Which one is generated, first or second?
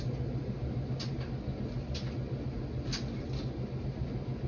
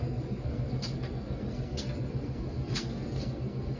second